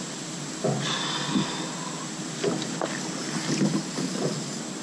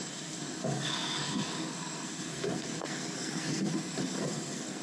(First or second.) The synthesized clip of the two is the second